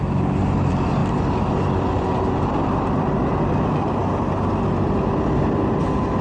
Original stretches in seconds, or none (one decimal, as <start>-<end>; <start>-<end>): 0.0-6.2